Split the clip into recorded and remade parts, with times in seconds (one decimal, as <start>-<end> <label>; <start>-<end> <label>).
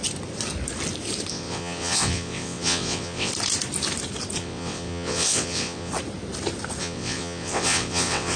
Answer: 0.0-1.3 recorded; 1.3-3.3 remade; 3.3-4.4 recorded; 4.4-5.9 remade; 5.9-6.8 recorded; 6.8-8.4 remade